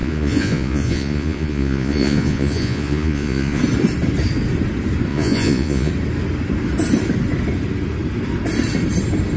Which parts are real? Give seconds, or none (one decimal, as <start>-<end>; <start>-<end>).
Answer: 3.6-5.1; 5.9-9.4